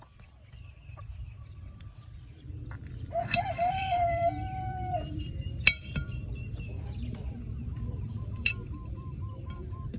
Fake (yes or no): yes